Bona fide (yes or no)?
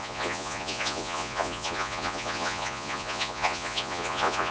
no